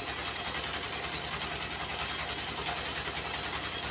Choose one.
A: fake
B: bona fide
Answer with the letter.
B